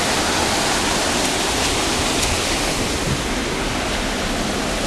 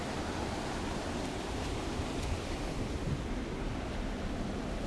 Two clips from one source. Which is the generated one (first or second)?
second